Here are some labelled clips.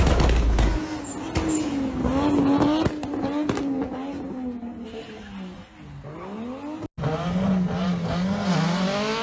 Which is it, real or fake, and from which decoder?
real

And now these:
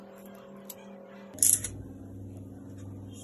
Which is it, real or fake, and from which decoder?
real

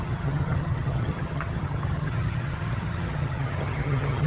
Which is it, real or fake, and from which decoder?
fake, vocoder, HiFi-GAN